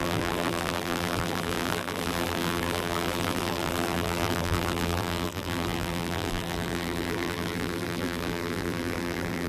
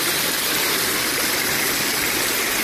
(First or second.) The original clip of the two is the second